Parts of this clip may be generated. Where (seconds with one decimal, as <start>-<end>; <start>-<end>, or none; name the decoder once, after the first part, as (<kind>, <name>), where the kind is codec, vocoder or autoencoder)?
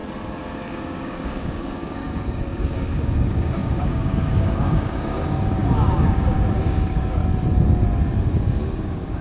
0.7-7.2 (codec, DAC); 8.2-9.2